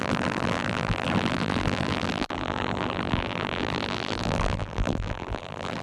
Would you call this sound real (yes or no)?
no